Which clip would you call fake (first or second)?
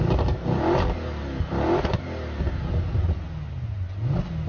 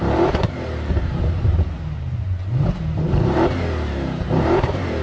second